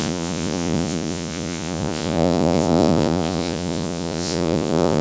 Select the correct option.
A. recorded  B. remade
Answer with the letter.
B